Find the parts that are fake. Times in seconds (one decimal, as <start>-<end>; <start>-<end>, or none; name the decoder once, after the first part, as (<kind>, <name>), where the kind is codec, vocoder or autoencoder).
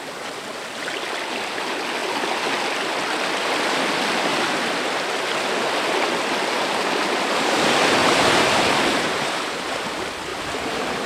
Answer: 8.0-9.9 (vocoder, BigVGAN v2); 10.3-11.1